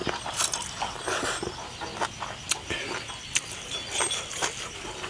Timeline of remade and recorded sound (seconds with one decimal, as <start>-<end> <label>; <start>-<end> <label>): 0.0-5.1 recorded